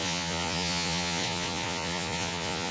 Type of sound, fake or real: fake